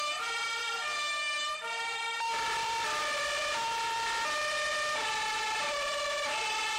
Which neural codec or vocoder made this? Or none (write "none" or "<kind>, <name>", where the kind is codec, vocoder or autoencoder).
vocoder, BigVGAN v2